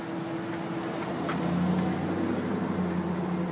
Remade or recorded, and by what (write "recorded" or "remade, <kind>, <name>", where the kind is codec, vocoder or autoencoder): recorded